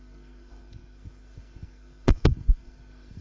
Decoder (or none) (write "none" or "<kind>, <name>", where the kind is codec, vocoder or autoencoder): codec, SNAC